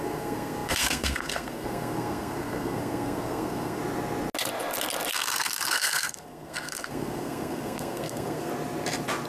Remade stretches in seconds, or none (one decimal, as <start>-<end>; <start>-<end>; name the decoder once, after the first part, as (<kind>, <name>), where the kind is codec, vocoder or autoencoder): 0.0-3.8 (codec, SNAC); 5.1-8.5